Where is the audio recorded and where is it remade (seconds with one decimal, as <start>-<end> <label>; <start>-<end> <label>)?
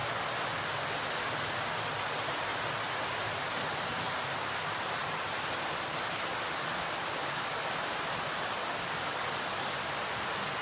0.0-10.6 recorded